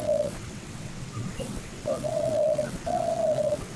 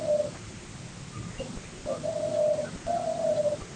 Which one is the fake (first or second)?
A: first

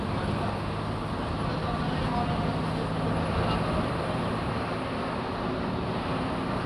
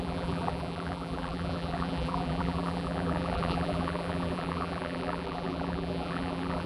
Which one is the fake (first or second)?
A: second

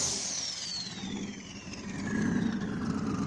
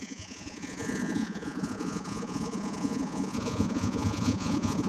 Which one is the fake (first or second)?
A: second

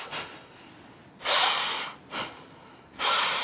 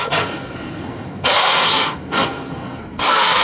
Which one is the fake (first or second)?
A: second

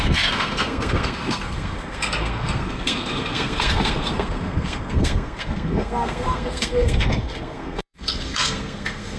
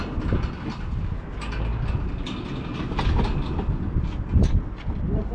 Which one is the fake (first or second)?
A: first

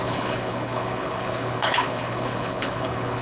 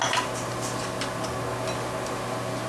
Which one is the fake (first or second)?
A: first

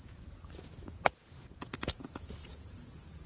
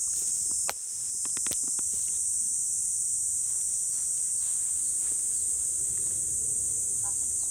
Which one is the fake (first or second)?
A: first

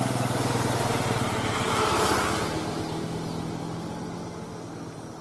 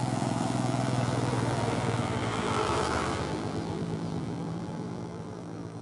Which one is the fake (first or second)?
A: second